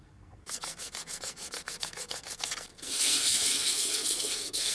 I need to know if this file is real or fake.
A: fake